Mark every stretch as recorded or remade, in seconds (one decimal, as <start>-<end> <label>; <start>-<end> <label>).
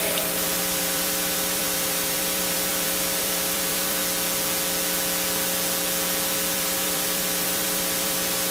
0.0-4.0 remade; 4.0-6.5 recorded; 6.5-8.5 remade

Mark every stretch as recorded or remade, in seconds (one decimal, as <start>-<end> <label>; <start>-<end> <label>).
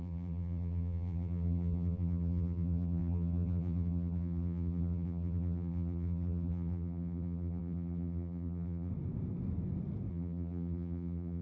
0.0-8.9 remade; 8.9-10.1 recorded; 10.1-11.4 remade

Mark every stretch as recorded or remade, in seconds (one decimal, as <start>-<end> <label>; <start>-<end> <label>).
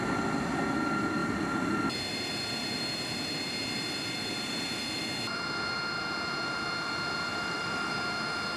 0.0-1.2 recorded; 1.2-5.0 remade; 5.0-7.3 recorded; 7.3-7.9 remade; 7.9-8.6 recorded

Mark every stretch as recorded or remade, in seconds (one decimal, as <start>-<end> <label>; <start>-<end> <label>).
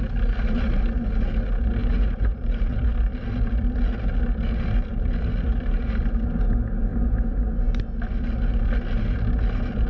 0.0-1.8 recorded; 1.8-2.9 remade; 2.9-4.9 recorded; 4.9-6.0 remade; 6.0-9.9 recorded